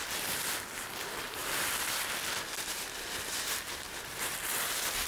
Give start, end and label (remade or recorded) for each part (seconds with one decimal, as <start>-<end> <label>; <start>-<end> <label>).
0.0-1.4 recorded; 1.4-4.1 remade; 4.1-5.1 recorded